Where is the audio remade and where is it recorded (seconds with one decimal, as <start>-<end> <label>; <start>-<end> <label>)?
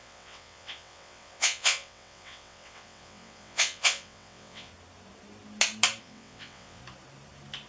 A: 0.0-4.7 remade; 4.7-6.0 recorded; 6.0-6.8 remade; 6.8-7.7 recorded